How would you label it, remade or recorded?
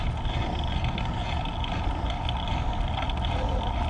recorded